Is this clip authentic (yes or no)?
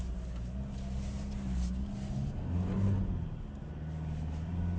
yes